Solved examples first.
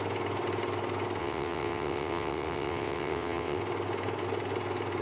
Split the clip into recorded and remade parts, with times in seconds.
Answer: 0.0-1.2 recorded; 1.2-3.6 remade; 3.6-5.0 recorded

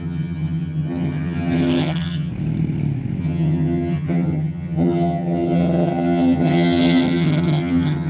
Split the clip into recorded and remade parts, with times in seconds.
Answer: 0.0-2.3 remade; 2.3-3.2 recorded; 3.2-8.1 remade

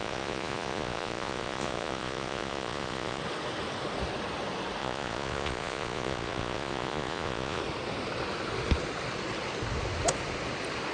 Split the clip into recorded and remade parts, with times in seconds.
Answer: 0.0-3.2 remade; 3.2-4.8 recorded; 4.8-7.6 remade; 7.6-10.9 recorded

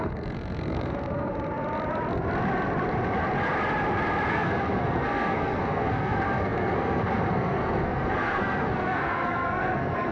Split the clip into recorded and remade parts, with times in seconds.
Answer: 0.0-1.3 remade; 1.3-4.3 recorded; 4.3-10.1 remade

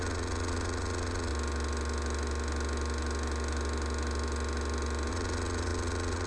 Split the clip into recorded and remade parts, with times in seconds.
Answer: 0.0-1.3 remade; 1.3-5.1 recorded; 5.1-6.3 remade

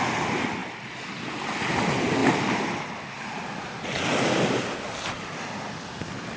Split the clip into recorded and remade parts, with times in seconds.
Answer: 0.0-6.4 recorded